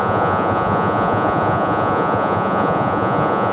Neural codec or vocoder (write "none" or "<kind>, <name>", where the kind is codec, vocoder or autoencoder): vocoder, Vocos